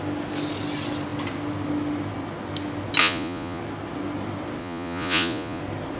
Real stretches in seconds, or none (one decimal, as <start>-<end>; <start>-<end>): 0.0-3.0; 3.6-4.6; 5.6-6.0